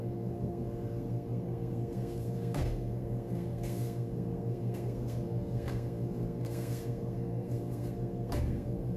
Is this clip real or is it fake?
fake